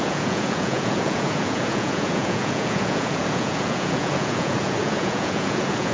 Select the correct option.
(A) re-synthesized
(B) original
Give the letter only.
A